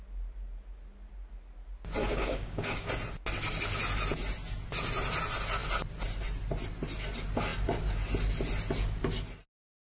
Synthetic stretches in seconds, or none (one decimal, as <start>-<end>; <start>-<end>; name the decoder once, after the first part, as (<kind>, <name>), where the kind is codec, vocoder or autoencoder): 2.0-2.9 (codec, DAC)